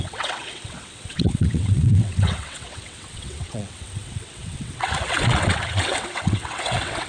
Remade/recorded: remade